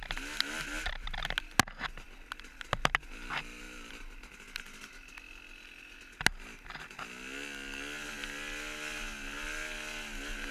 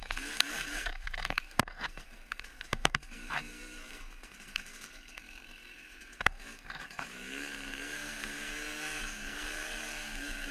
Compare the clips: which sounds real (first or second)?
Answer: first